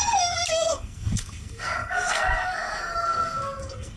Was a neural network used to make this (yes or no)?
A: yes